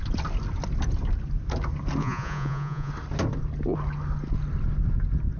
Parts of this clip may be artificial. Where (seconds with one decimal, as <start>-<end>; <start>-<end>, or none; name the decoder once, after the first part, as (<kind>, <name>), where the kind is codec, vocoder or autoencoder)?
2.0-2.9 (vocoder, Vocos)